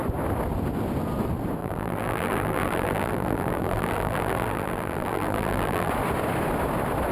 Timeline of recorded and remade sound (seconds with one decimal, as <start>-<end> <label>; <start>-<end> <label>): 0.0-1.6 recorded; 1.6-5.9 remade; 5.9-7.1 recorded